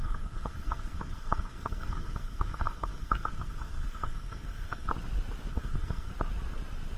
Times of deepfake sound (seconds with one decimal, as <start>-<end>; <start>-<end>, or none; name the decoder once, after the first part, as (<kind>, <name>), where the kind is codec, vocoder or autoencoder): 0.0-4.9 (codec, SNAC); 5.5-6.1